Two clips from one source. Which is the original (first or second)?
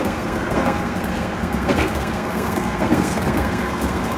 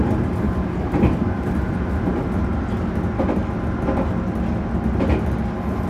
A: second